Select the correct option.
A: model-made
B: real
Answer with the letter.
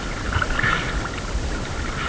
B